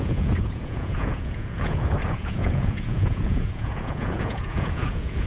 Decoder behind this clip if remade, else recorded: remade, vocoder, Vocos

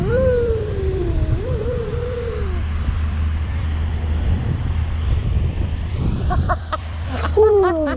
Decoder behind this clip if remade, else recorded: remade, vocoder, BigVGAN v2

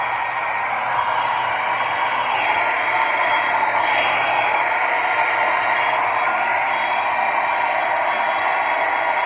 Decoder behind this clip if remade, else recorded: recorded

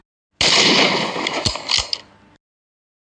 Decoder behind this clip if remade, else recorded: recorded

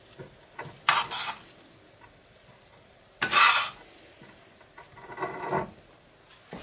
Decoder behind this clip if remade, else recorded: recorded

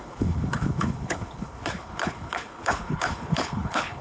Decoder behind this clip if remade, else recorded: remade, codec, HILCodec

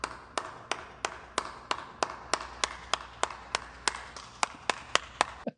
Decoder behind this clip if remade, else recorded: recorded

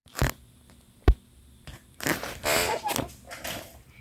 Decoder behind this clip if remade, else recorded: remade, vocoder, BigVGAN v2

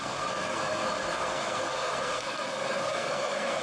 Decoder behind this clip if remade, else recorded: remade, codec, SNAC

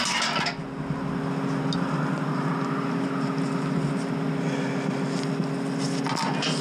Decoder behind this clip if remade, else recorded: recorded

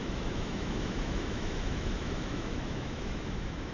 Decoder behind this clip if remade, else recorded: remade, autoencoder, DAC-VAE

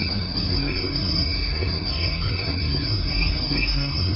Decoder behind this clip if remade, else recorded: remade, codec, SNAC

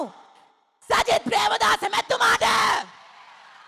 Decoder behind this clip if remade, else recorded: remade, vocoder, BigVGAN v2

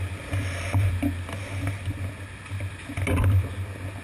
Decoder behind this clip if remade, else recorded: recorded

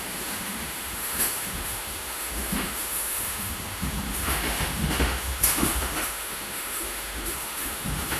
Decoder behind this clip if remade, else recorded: remade, autoencoder, DAC-VAE